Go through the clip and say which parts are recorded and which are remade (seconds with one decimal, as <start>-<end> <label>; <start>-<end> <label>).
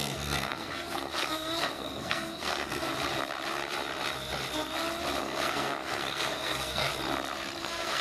0.0-2.9 remade; 2.9-5.2 recorded; 5.2-6.9 remade; 6.9-7.6 recorded; 7.6-8.0 remade